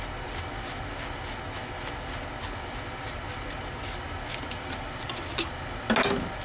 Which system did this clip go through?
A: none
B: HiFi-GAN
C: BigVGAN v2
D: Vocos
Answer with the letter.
A